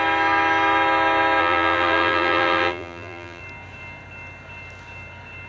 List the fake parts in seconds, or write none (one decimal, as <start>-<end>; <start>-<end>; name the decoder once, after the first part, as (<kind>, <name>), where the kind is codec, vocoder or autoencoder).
1.4-3.4 (vocoder, BigVGAN v2)